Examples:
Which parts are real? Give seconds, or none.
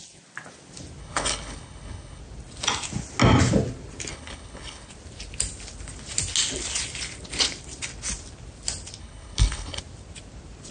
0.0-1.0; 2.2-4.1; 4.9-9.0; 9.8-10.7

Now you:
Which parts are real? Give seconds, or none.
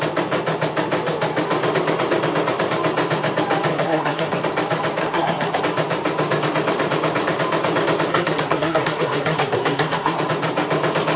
0.0-3.7; 4.4-5.0; 5.6-8.1; 10.2-11.2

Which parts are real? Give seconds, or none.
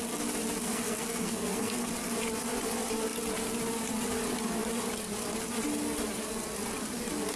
0.0-0.6; 1.9-7.4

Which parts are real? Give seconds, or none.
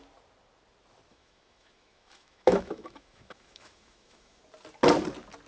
0.0-1.1; 4.4-5.5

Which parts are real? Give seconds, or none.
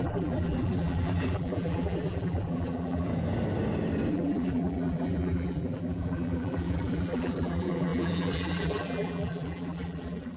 3.1-4.1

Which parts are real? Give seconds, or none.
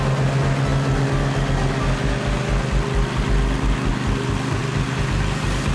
0.0-5.7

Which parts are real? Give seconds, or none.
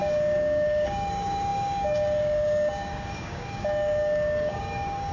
none